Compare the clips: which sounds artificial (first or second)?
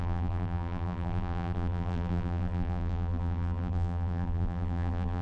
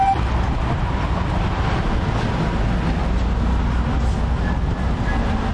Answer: first